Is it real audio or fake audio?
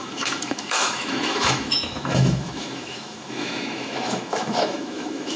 fake